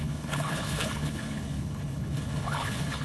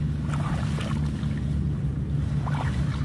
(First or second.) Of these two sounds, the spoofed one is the first